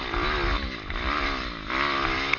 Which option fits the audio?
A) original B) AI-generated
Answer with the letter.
A